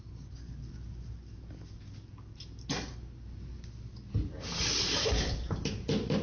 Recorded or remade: recorded